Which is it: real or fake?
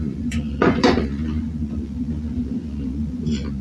fake